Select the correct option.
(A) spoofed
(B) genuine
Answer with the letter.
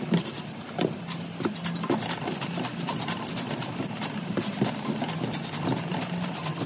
B